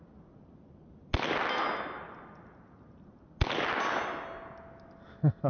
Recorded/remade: recorded